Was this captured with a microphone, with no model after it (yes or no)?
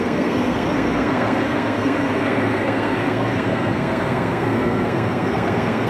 no